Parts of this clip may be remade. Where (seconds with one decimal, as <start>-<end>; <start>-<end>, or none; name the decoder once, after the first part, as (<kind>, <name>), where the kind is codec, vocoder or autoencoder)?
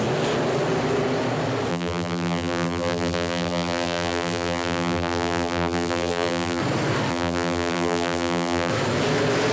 1.7-6.6 (vocoder, BigVGAN v2); 7.1-8.7